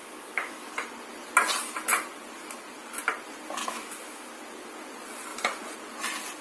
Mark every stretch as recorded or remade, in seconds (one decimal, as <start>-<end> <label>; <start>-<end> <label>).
0.0-0.7 remade; 0.7-3.6 recorded; 3.6-4.3 remade; 4.3-6.4 recorded